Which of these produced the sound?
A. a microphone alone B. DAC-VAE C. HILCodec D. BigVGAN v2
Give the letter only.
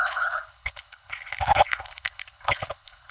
C